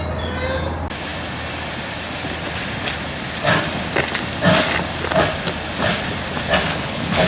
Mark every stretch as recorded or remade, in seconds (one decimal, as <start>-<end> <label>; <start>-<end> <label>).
0.0-6.7 recorded; 6.7-7.3 remade